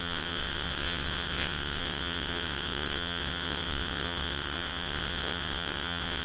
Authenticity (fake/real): fake